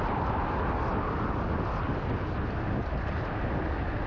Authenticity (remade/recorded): recorded